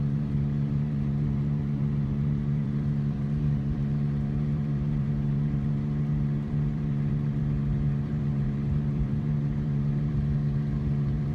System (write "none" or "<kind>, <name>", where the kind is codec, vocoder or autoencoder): vocoder, BigVGAN v2